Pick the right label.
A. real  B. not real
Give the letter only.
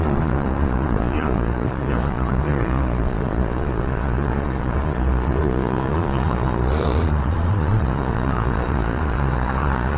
B